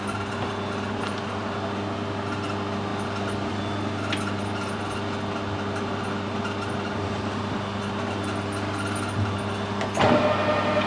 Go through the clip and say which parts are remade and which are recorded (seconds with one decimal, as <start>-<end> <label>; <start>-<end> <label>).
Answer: 0.0-10.9 recorded